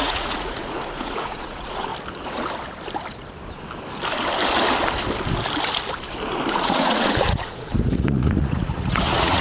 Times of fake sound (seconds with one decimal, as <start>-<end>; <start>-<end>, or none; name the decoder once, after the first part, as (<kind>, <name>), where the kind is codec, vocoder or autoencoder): 0.0-1.9 (vocoder, Vocos); 6.5-9.4